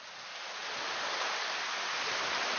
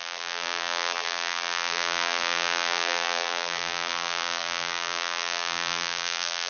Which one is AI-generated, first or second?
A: second